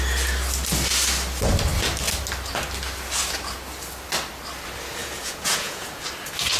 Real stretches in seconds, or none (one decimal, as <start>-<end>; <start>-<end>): 0.0-5.0; 6.0-6.6